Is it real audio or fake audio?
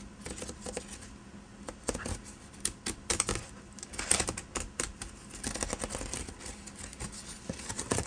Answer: real